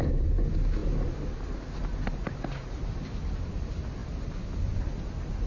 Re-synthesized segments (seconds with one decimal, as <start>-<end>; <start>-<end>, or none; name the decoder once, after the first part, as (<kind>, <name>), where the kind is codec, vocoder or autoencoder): none